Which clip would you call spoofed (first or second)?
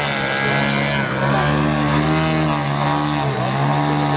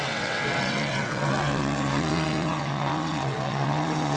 second